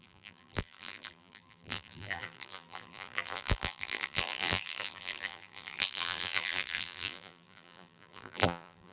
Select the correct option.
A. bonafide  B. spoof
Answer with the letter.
B